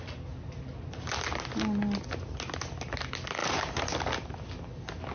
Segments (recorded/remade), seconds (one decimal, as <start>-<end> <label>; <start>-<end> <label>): 0.0-5.1 recorded

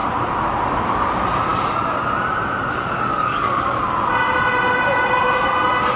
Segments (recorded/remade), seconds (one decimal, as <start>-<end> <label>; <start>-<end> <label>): 0.0-3.1 recorded; 3.1-3.8 remade; 3.8-6.0 recorded

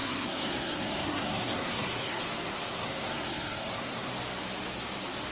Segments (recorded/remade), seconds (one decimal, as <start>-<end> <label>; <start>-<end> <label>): 0.0-2.2 remade; 2.2-2.7 recorded; 2.7-4.1 remade; 4.1-5.3 recorded

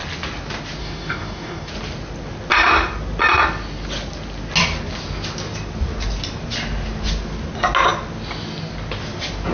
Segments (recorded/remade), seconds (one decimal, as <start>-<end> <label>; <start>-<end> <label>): 0.0-0.8 recorded; 0.8-1.7 remade; 1.7-9.5 recorded

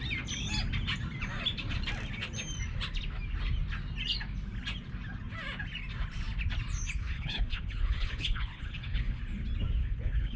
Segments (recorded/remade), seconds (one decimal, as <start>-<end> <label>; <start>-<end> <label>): 0.0-7.0 recorded; 7.0-9.2 remade; 9.2-9.8 recorded; 9.8-10.4 remade

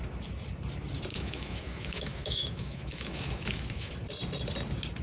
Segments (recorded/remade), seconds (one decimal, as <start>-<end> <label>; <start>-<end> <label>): 0.0-1.1 recorded; 1.1-3.9 remade; 3.9-5.0 recorded